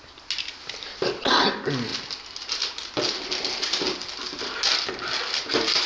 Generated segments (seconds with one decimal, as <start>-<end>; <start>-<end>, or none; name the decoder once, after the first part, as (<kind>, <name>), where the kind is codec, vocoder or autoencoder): none